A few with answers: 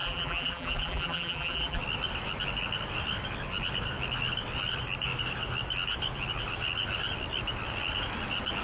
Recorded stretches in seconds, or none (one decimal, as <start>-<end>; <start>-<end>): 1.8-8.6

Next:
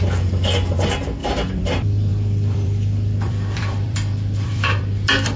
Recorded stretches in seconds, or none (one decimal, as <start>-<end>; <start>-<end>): 0.0-1.2; 1.7-2.1

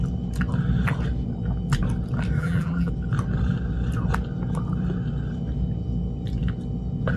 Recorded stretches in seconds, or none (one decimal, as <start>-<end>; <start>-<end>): 0.0-2.4; 2.9-7.2